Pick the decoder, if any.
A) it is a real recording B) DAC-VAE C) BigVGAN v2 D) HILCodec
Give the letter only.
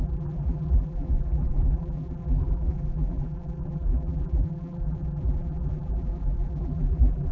C